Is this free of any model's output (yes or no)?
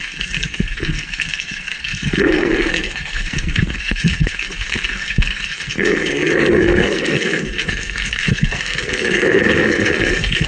no